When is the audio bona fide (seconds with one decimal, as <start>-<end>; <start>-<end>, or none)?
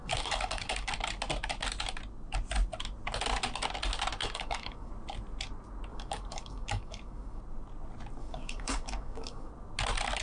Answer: 0.9-4.2; 4.9-5.9; 7.4-8.2; 9.5-10.2